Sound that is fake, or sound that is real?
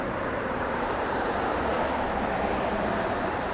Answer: fake